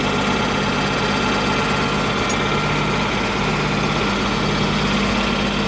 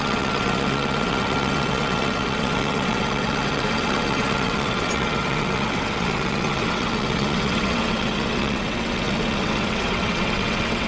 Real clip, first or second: first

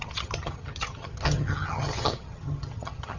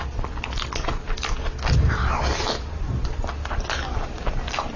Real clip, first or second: second